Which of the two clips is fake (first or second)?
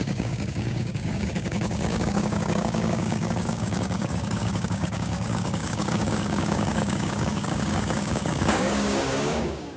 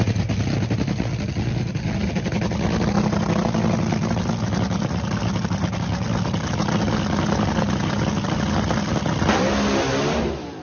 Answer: first